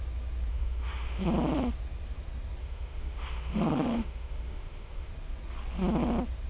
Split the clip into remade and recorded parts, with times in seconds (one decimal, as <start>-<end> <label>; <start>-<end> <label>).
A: 0.0-0.5 recorded; 0.5-1.2 remade; 1.2-2.6 recorded; 2.6-5.1 remade; 5.1-6.5 recorded